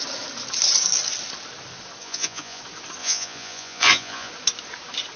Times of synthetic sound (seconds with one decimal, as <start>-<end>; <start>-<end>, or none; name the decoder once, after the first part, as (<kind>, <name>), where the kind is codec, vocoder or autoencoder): 2.0-2.6 (vocoder, Vocos); 3.0-4.3

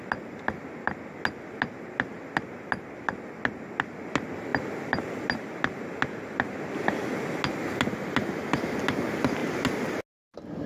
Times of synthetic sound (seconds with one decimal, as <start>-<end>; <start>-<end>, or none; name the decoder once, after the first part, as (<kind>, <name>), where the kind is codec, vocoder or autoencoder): none